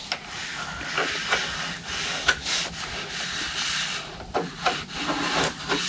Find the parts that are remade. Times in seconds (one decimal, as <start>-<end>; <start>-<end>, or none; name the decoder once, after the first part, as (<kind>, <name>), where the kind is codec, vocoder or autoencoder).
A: 0.5-2.8 (codec, DAC)